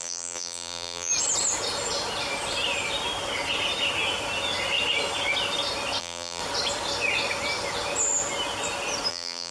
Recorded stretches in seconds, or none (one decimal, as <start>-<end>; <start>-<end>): 1.1-6.0; 6.4-9.1